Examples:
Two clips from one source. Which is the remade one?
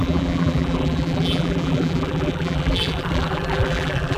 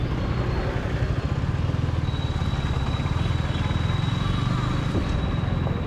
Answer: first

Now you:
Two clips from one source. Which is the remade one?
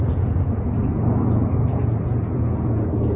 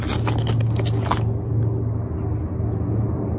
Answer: first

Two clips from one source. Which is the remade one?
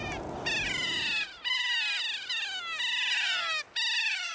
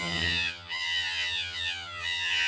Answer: second